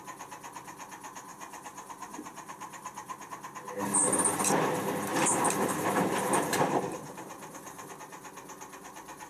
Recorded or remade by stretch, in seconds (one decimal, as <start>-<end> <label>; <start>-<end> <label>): 0.0-1.3 recorded; 1.3-3.3 remade; 3.3-5.1 recorded; 5.1-8.0 remade; 8.0-9.3 recorded